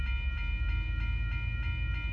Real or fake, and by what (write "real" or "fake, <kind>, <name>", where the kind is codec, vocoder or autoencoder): real